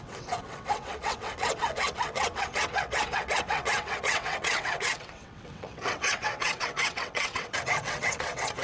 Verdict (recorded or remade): remade